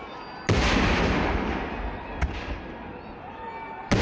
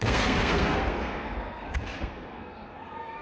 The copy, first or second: second